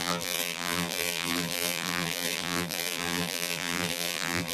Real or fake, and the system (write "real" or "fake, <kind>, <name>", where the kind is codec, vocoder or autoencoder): fake, vocoder, BigVGAN v2